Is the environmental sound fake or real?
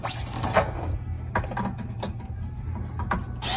real